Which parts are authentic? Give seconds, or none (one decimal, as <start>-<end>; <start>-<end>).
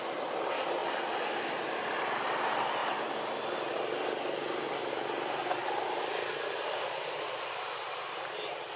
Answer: 0.0-8.8